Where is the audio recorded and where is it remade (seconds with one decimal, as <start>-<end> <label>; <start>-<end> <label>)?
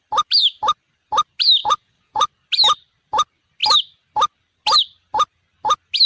0.0-1.6 recorded; 1.6-2.3 remade; 2.3-6.1 recorded